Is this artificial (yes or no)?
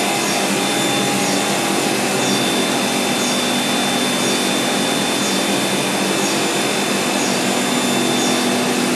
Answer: no